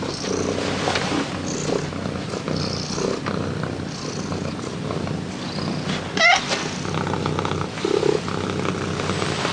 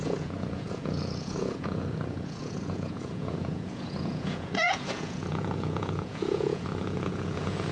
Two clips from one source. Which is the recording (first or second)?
first